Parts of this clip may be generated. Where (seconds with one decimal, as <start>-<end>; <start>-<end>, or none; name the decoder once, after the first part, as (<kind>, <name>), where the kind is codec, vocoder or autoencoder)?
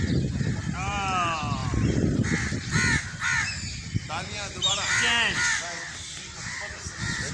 none